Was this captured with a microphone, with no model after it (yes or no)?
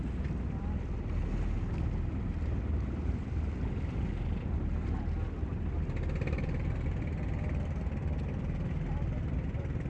yes